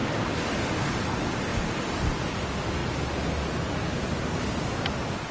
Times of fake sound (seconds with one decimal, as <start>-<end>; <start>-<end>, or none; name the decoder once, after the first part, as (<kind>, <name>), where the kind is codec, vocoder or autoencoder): 1.1-1.5 (vocoder, BigVGAN v2); 2.1-2.8